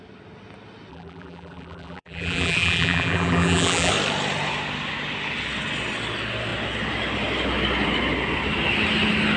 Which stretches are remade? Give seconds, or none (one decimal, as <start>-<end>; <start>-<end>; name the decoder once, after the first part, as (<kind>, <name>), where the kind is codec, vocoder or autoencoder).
0.9-3.9 (vocoder, BigVGAN v2)